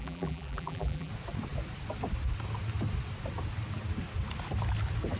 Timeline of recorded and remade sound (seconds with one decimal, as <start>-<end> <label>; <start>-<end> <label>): 0.0-1.1 remade; 1.1-5.2 recorded